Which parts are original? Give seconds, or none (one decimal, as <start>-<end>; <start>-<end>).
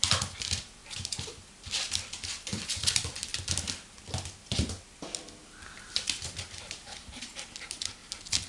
3.3-5.1; 8.0-8.5